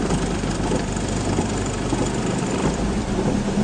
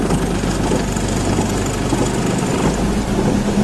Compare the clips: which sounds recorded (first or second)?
second